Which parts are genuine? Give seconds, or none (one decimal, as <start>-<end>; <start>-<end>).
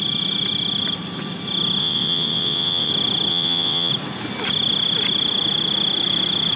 0.0-1.8; 2.9-3.3; 3.9-6.6